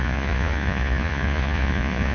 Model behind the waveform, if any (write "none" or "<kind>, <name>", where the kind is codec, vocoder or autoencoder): vocoder, Vocos